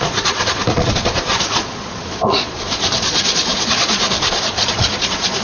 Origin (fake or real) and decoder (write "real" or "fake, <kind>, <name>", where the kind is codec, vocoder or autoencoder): fake, vocoder, Vocos